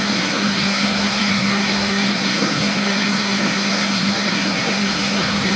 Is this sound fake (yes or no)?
yes